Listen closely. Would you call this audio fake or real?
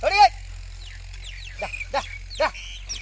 real